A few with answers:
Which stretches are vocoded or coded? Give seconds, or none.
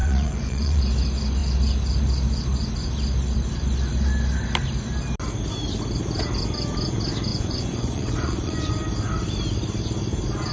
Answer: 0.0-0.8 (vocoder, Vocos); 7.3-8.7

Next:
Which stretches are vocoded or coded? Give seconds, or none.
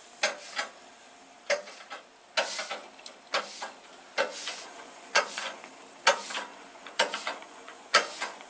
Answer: 4.2-5.7 (vocoder, Vocos); 6.5-8.5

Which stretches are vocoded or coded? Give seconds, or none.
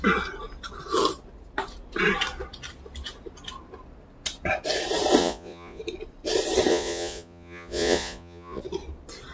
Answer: 5.2-5.8 (vocoder, Vocos); 6.7-8.6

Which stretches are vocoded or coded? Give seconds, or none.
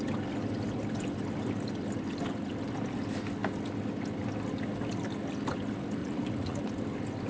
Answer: 6.0-6.6 (vocoder, Vocos)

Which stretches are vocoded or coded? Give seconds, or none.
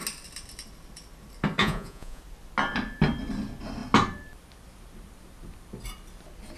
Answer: 1.6-2.2 (vocoder, Vocos)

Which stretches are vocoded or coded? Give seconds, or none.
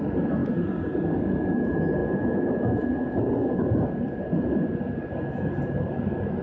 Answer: none